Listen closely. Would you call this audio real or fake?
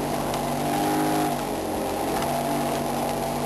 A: real